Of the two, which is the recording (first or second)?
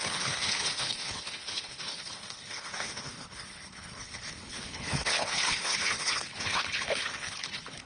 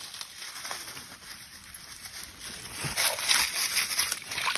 second